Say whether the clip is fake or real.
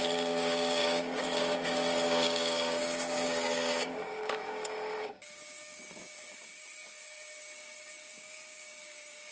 fake